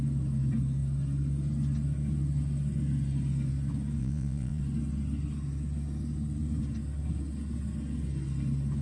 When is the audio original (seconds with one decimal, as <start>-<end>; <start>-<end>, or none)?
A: 0.0-4.0; 4.6-8.8